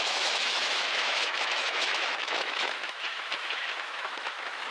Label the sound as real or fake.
fake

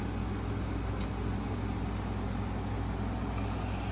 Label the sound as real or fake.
real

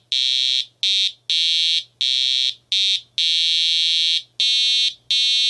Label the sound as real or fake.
real